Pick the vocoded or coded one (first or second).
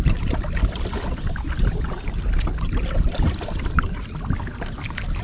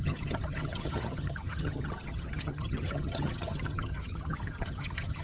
second